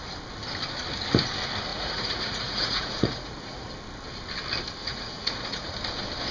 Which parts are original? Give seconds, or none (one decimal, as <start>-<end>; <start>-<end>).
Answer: 0.0-1.7; 3.7-4.8; 5.7-6.3